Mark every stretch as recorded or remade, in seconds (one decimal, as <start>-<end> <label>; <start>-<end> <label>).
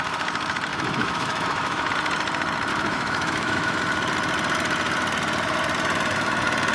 0.0-0.7 recorded; 0.7-1.9 remade; 1.9-2.7 recorded; 2.7-3.8 remade; 3.8-6.7 recorded